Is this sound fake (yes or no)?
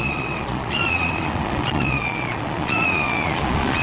yes